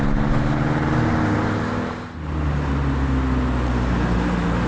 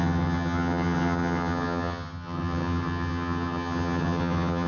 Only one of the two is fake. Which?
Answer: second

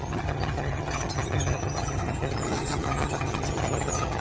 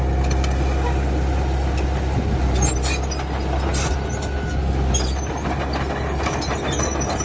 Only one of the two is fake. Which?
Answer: first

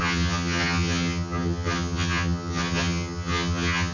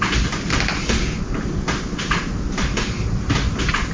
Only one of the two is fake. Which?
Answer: first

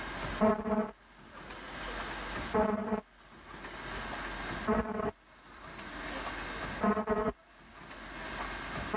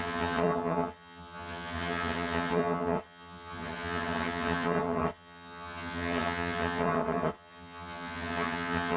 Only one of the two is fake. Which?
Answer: second